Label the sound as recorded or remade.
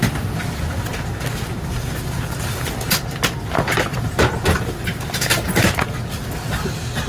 recorded